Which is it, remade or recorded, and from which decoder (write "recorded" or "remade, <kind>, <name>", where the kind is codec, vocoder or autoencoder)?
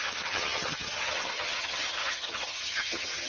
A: remade, vocoder, HiFi-GAN